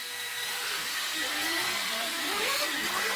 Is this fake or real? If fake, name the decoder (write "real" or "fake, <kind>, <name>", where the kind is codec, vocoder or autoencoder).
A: fake, codec, SNAC